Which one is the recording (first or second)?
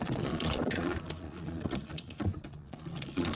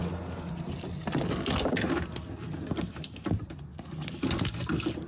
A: second